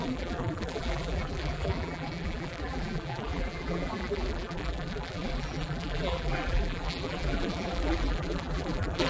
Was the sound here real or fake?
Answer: fake